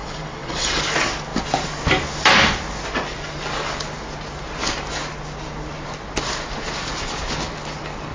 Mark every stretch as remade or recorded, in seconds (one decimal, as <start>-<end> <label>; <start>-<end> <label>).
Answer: 0.0-0.8 remade; 0.8-8.1 recorded